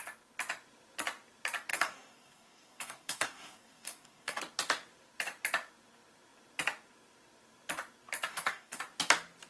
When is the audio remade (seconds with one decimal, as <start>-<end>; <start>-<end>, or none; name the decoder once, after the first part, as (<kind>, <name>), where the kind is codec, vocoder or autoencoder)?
1.7-4.4 (codec, DAC); 8.3-8.8